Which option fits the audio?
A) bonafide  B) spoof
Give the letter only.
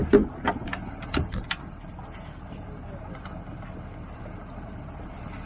A